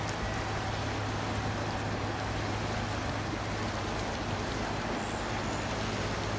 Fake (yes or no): no